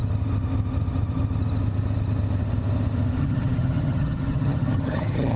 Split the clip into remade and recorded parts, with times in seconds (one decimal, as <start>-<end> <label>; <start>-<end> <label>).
0.0-3.2 recorded; 3.2-5.4 remade